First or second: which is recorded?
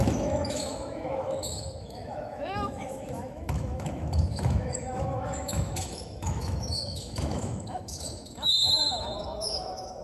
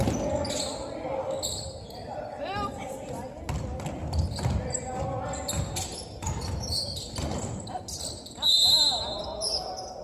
second